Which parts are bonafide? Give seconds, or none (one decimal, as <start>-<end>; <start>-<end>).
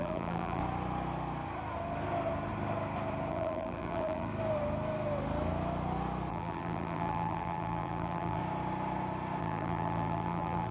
0.6-3.3; 4.3-6.3; 8.4-9.4